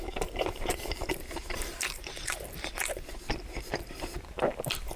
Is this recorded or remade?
remade